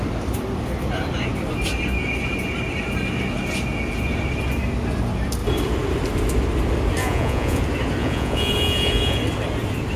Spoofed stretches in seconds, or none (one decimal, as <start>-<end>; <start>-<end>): 7.0-7.6; 8.0-9.2